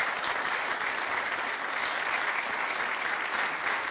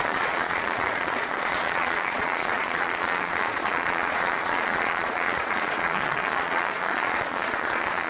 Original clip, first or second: first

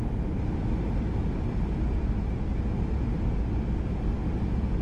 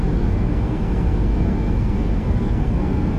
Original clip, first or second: first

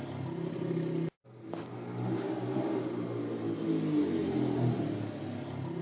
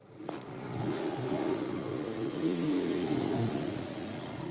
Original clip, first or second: first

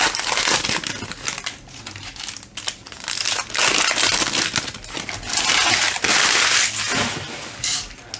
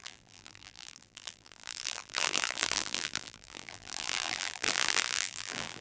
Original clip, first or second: first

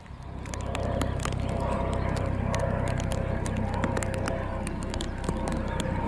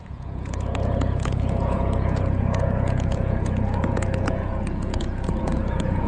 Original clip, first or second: first